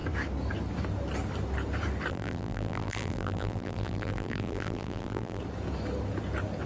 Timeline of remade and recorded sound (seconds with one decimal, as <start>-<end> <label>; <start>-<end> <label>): 0.0-2.1 recorded; 2.1-5.4 remade; 5.4-6.7 recorded

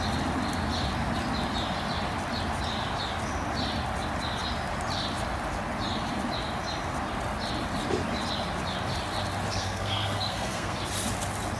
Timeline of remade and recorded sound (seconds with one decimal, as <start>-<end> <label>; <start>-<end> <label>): 0.0-9.5 recorded; 9.5-10.8 remade; 10.8-11.6 recorded

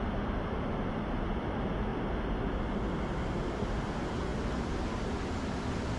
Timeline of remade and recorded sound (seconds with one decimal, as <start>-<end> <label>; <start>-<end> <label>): 0.0-6.0 recorded

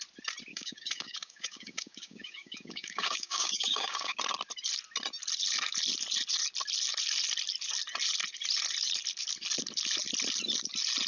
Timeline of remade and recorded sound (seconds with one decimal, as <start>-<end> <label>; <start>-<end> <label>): 0.0-0.5 recorded; 0.5-4.2 remade; 4.2-11.1 recorded